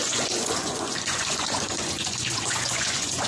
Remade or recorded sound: remade